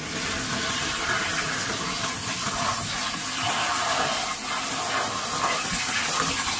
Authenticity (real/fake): real